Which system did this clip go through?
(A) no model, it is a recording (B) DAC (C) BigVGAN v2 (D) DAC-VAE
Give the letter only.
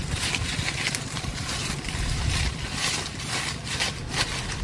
A